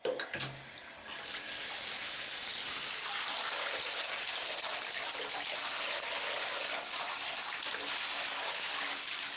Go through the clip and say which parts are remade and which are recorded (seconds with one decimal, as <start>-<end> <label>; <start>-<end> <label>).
0.0-9.4 recorded